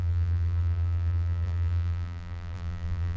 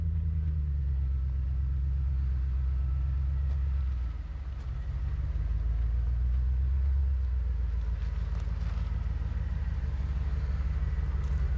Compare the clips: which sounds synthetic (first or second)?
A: first